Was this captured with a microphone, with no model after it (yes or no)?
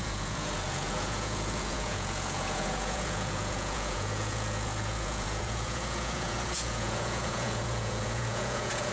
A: no